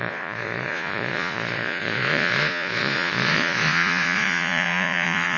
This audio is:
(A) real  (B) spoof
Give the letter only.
B